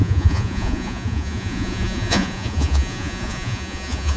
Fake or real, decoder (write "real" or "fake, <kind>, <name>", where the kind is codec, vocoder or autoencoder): fake, vocoder, Vocos